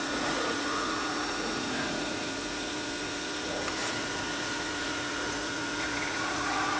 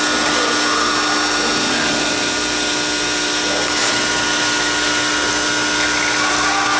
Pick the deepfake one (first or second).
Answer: first